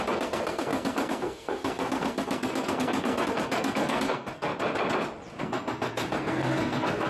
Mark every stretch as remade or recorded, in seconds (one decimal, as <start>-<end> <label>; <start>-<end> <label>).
0.0-4.5 remade; 4.5-5.4 recorded; 5.4-7.1 remade